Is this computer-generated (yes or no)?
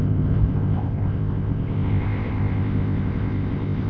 yes